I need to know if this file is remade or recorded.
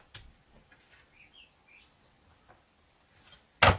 recorded